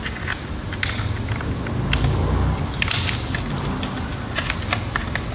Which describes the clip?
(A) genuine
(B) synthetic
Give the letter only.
A